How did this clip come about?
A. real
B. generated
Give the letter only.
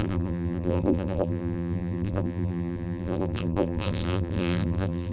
B